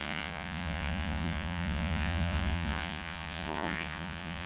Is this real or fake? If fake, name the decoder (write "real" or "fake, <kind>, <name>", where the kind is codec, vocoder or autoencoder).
fake, vocoder, Vocos